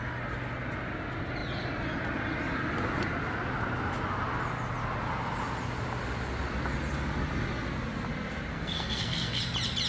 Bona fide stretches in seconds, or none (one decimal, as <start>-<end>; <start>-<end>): 0.0-8.5; 9.4-9.9